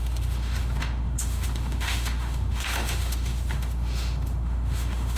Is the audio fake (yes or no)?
yes